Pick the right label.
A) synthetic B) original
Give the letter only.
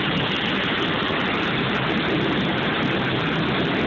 B